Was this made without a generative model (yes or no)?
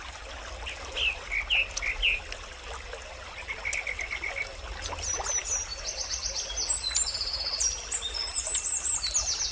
yes